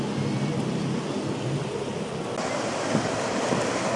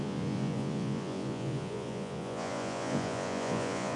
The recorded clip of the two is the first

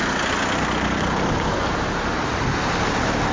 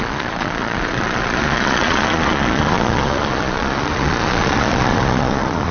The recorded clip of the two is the first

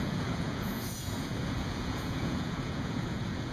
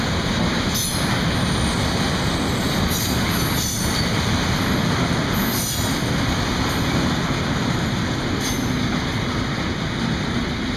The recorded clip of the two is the second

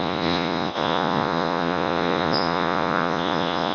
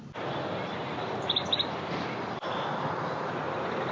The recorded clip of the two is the second